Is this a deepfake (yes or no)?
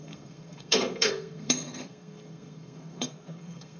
yes